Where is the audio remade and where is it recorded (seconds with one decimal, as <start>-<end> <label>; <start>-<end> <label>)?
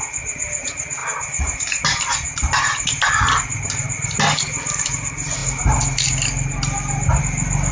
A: 0.0-7.7 recorded